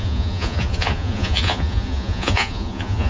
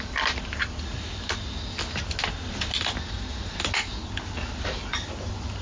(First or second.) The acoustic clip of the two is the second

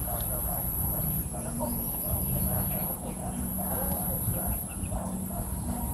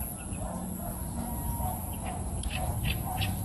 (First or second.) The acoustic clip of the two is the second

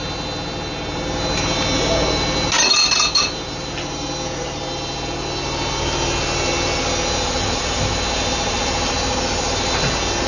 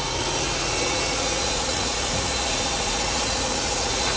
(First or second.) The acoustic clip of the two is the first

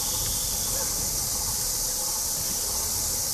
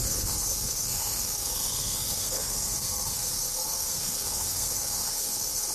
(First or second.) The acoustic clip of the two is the first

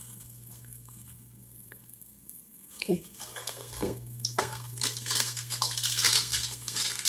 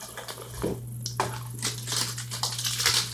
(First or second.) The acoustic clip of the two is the second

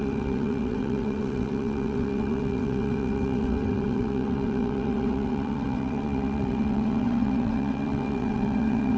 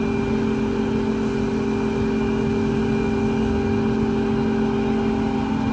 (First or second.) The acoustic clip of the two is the second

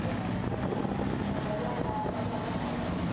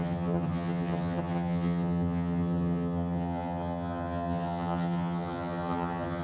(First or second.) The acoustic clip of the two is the first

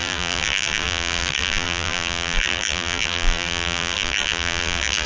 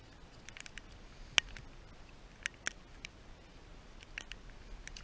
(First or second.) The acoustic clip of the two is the second